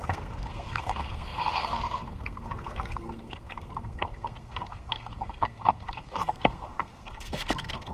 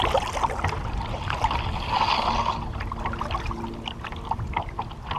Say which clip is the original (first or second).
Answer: second